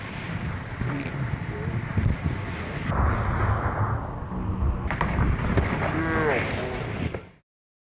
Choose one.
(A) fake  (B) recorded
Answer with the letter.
B